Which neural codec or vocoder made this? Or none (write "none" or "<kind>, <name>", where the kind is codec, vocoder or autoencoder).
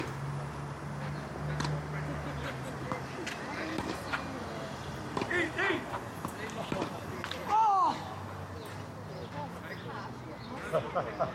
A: none